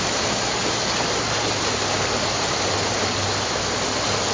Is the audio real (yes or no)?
yes